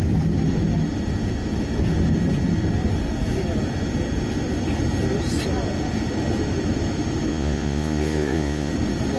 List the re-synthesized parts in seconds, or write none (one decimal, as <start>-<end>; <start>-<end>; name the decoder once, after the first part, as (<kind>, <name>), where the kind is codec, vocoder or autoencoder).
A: 7.3-8.7 (vocoder, Vocos)